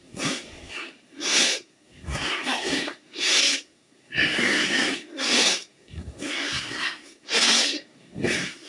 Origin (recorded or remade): remade